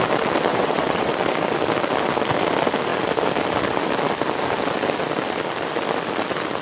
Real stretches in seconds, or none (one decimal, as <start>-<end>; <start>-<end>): 0.0-0.5; 1.1-6.6